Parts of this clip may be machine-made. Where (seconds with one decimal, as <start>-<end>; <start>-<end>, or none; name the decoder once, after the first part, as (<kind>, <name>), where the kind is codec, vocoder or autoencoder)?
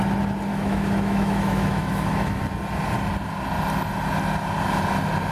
0.5-2.4 (autoencoder, DAC-VAE)